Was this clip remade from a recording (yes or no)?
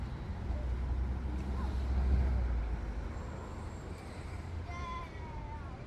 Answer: no